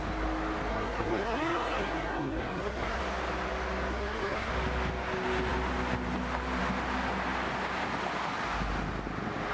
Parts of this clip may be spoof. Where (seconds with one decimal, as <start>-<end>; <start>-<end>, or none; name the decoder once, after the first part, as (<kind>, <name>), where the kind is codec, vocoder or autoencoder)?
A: 0.7-3.0 (codec, SNAC); 3.9-4.5